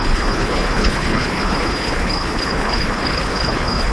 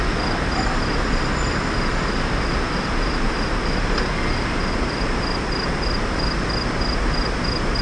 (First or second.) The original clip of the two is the second